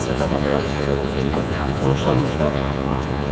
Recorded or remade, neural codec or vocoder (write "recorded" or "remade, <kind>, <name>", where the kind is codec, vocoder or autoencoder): remade, vocoder, Vocos